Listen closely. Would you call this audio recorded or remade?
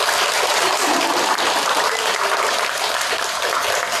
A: recorded